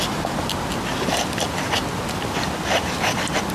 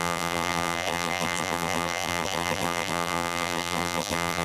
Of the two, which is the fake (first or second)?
second